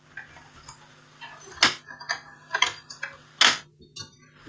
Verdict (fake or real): real